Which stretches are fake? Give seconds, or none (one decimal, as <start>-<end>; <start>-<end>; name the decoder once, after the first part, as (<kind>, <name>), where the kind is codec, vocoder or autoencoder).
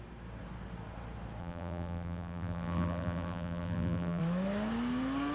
1.4-4.2 (vocoder, BigVGAN v2)